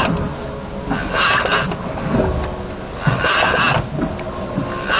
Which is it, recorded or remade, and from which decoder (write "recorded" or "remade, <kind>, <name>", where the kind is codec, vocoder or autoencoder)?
recorded